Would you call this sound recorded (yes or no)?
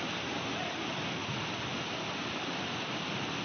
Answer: yes